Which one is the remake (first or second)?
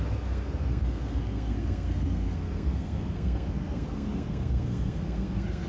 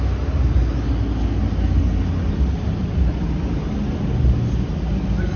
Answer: first